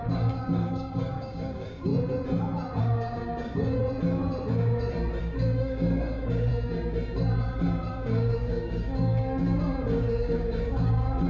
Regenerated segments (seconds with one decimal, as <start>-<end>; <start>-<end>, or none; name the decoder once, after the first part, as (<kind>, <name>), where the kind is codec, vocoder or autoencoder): 0.0-1.9 (codec, DAC); 2.8-3.8; 5.2-6.5; 7.9-11.3